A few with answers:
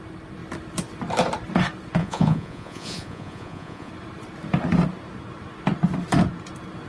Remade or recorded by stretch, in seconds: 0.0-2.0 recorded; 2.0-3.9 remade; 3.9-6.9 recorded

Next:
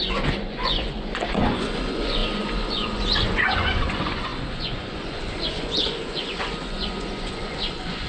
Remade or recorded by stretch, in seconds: 0.0-8.1 remade